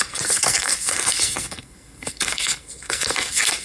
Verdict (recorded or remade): remade